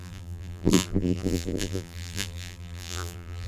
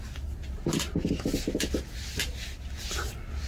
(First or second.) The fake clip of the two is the first